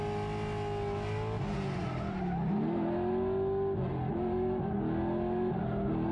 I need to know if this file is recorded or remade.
recorded